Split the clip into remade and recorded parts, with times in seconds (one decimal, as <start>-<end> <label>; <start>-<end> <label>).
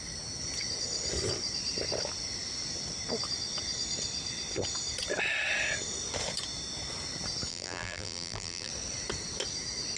0.0-7.5 recorded; 7.5-8.7 remade; 8.7-10.0 recorded